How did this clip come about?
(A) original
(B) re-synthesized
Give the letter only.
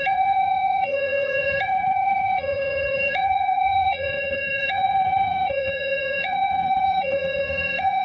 B